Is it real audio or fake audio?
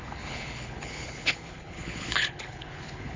fake